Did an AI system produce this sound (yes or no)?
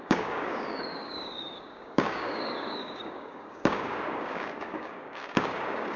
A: yes